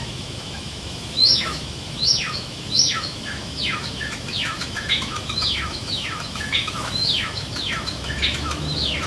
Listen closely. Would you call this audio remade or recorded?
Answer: remade